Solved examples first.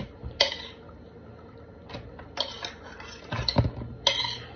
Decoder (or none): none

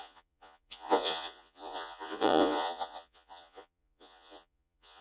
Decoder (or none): vocoder, Vocos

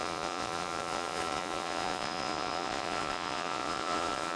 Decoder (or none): vocoder, Vocos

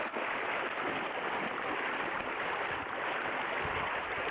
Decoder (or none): none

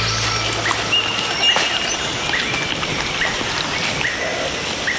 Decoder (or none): none